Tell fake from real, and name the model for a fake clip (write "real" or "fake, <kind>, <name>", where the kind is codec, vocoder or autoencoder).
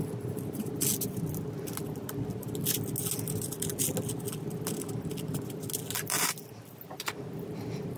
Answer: real